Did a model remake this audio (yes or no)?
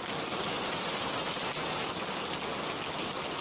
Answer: no